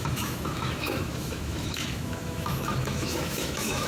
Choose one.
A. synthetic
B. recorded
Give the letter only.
A